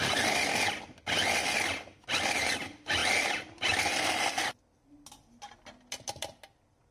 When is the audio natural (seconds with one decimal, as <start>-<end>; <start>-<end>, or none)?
0.0-6.9